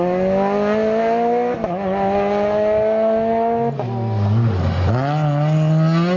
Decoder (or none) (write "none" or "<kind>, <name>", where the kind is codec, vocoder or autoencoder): none